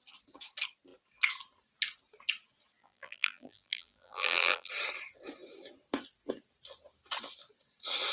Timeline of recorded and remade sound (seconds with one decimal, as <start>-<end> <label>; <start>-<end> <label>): 0.0-2.8 recorded; 2.8-4.7 remade; 4.7-8.1 recorded